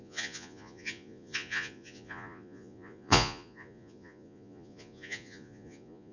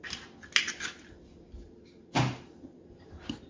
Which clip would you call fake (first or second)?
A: first